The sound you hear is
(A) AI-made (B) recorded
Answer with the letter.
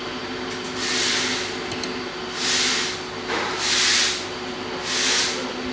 B